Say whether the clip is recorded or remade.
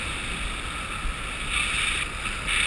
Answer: recorded